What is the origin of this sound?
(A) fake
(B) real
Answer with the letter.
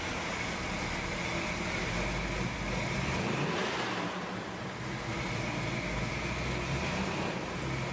B